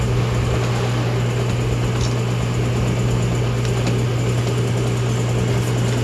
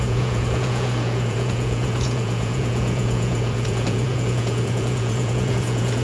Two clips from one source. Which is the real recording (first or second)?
first